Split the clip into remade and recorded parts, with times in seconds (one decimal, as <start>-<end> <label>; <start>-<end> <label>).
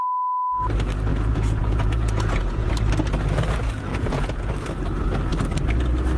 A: 0.0-1.1 recorded; 1.1-2.7 remade; 2.7-3.9 recorded; 3.9-4.5 remade; 4.5-6.2 recorded